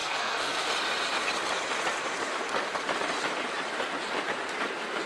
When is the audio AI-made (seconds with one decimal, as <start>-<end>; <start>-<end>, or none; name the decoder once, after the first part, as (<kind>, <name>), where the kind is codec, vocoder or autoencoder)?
0.0-0.7 (codec, SNAC)